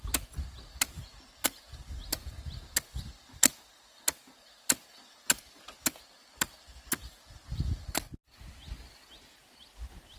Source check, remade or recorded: recorded